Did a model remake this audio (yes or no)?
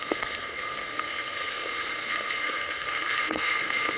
yes